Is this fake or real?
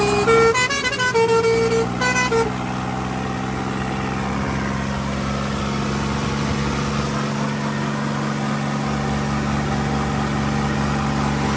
real